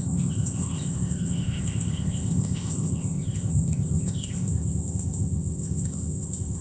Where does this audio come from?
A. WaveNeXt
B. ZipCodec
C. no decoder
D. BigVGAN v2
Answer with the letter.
B